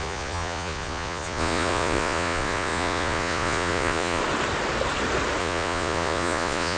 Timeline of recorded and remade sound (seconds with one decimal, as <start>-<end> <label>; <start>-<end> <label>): 0.0-4.2 remade; 4.2-5.4 recorded; 5.4-6.8 remade